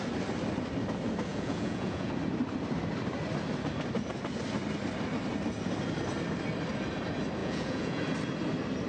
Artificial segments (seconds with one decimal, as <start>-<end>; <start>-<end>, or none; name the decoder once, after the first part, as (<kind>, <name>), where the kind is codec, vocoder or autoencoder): 1.3-2.1 (vocoder, Vocos); 7.4-8.0